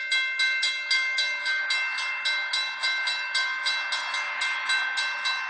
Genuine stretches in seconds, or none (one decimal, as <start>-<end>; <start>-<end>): 0.0-5.5